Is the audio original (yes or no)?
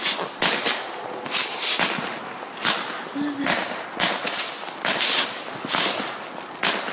yes